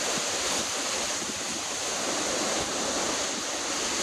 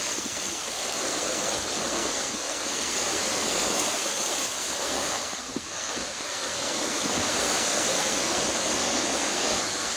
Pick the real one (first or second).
first